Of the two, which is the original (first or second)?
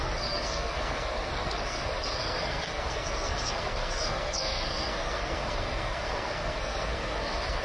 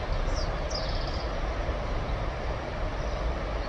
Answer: second